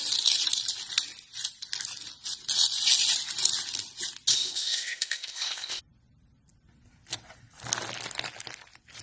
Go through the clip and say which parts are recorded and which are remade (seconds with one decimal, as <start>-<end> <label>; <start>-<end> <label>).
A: 0.0-4.3 recorded; 4.3-5.8 remade; 5.8-9.0 recorded

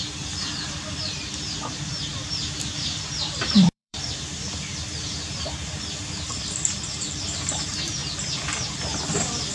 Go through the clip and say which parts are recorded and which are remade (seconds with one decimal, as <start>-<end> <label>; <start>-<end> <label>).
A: 0.0-2.1 recorded; 2.1-6.3 remade; 6.3-9.5 recorded

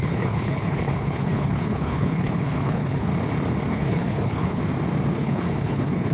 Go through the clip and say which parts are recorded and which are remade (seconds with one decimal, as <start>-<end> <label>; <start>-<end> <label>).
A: 0.0-3.1 remade; 3.1-3.7 recorded; 3.7-4.6 remade; 4.6-5.1 recorded; 5.1-6.1 remade

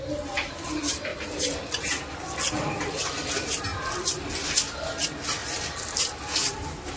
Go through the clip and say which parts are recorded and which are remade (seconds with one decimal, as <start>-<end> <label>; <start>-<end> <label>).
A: 0.0-1.1 recorded; 1.1-1.8 remade; 1.8-5.4 recorded; 5.4-7.0 remade

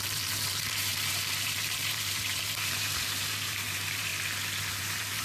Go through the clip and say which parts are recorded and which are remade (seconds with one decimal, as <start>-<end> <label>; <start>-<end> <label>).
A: 0.0-4.1 remade; 4.1-4.8 recorded; 4.8-5.2 remade

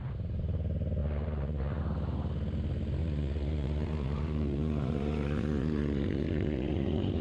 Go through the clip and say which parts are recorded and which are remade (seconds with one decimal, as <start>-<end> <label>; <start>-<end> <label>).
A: 0.0-1.0 recorded; 1.0-1.8 remade; 1.8-3.0 recorded; 3.0-7.2 remade

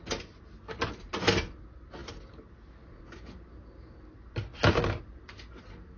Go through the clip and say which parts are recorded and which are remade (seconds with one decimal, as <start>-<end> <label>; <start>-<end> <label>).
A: 0.0-6.0 recorded